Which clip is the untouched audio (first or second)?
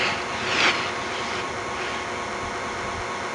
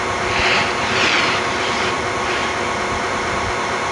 first